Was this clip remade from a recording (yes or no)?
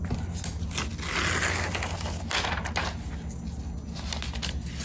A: no